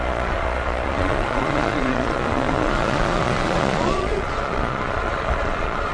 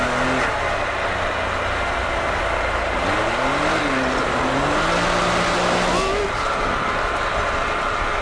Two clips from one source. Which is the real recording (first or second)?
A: second